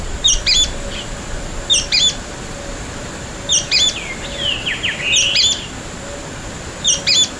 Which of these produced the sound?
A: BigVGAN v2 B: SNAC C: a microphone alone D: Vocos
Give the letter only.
C